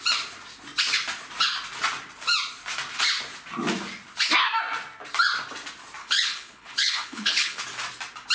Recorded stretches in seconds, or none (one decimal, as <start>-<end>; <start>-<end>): 0.0-6.0; 7.6-8.3